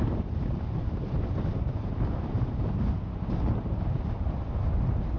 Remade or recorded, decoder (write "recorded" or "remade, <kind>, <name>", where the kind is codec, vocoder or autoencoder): remade, vocoder, BigVGAN v2